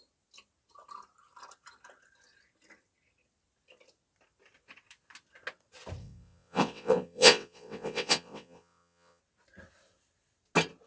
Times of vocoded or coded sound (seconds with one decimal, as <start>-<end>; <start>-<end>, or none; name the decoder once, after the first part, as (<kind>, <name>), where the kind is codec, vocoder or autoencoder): 6.0-9.2 (vocoder, WaveNeXt)